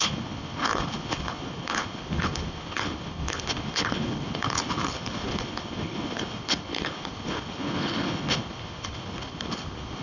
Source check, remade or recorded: remade